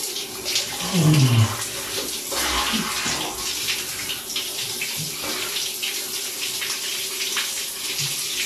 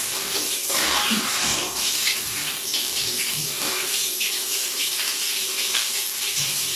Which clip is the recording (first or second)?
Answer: first